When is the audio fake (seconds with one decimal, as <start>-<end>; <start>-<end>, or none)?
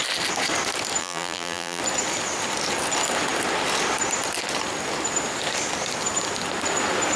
1.0-1.8